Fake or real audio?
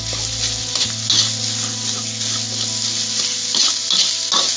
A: real